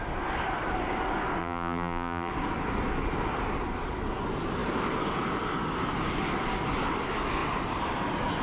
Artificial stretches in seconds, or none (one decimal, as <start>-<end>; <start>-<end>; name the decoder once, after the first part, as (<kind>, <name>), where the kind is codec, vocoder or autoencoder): 1.4-2.3 (vocoder, BigVGAN v2)